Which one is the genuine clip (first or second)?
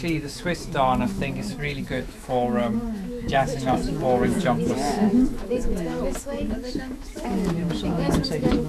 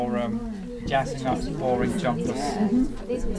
second